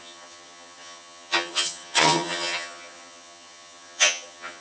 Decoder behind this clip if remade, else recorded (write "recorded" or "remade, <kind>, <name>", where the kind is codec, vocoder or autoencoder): remade, vocoder, HiFi-GAN